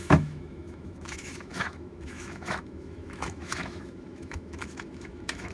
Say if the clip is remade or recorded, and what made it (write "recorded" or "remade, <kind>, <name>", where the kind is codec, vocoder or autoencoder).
remade, autoencoder, DAC-VAE